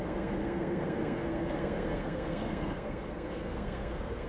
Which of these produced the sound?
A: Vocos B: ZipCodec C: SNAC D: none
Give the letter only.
C